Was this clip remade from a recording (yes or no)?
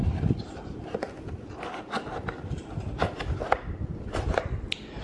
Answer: no